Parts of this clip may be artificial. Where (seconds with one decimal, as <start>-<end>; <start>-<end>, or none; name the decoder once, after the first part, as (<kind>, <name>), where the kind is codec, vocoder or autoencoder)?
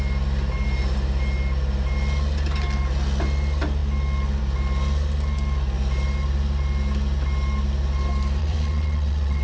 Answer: 8.4-9.4 (vocoder, WaveNeXt)